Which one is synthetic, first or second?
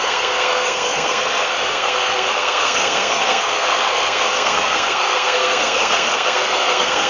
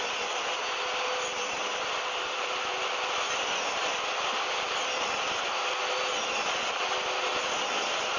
first